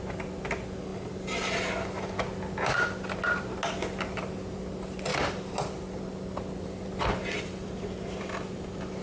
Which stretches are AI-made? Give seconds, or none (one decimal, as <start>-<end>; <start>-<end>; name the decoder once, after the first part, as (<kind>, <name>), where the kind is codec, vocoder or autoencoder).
none